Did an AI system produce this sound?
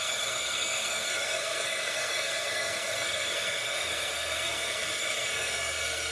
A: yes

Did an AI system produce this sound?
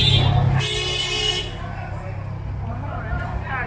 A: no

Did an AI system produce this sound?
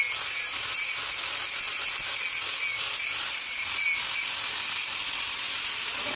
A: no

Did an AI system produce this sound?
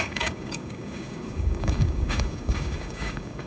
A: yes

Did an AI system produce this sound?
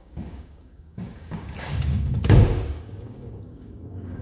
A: yes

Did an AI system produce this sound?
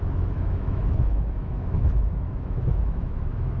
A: yes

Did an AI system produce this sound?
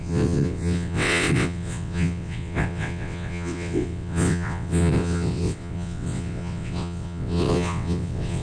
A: yes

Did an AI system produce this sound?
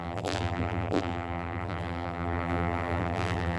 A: yes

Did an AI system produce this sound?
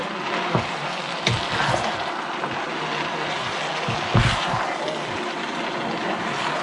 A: no